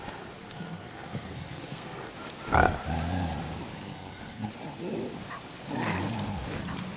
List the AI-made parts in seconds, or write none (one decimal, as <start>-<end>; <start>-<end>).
0.4-2.1; 3.7-4.5